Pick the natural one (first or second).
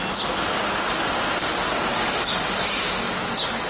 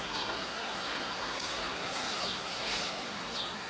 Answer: first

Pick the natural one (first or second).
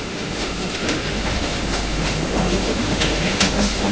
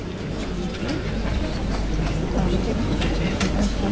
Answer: second